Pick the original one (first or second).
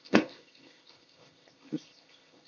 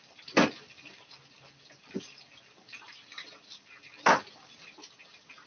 second